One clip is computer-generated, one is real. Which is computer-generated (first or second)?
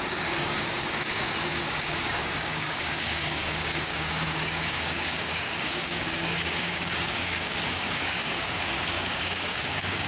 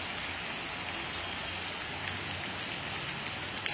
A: first